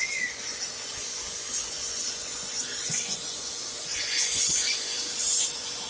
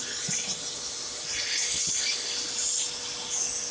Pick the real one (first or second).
second